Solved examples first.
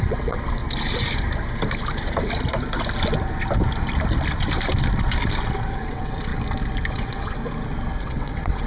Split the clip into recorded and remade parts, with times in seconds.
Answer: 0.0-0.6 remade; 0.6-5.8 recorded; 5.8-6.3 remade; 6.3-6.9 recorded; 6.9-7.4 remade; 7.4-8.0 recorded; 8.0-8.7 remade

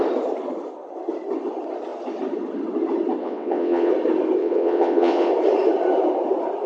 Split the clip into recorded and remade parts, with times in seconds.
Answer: 0.0-3.2 recorded; 3.2-3.9 remade; 3.9-4.4 recorded; 4.4-5.3 remade; 5.3-6.7 recorded

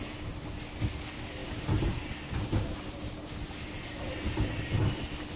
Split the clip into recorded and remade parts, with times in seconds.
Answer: 0.0-5.4 recorded

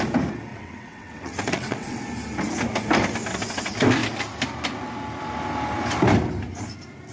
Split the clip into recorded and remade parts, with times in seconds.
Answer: 0.0-0.5 recorded; 0.5-2.0 remade; 2.0-7.1 recorded

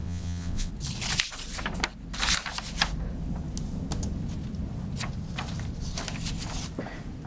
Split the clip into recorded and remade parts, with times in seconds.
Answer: 0.0-0.7 remade; 0.7-7.3 recorded